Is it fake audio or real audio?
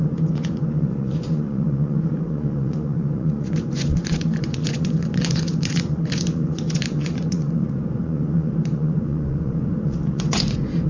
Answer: fake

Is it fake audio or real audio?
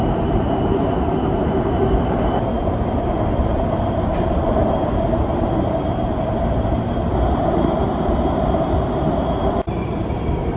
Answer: fake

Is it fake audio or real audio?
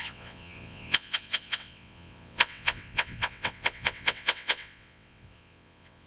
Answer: fake